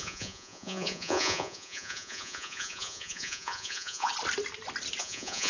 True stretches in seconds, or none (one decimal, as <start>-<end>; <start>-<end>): 4.1-5.0